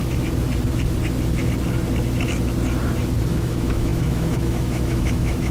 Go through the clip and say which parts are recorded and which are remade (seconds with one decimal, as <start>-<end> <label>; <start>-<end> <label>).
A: 0.0-3.3 recorded; 3.3-5.5 remade